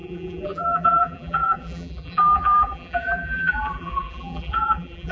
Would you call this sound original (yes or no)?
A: no